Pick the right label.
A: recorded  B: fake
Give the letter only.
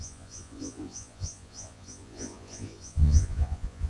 B